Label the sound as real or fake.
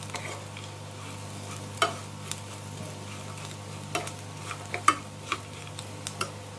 real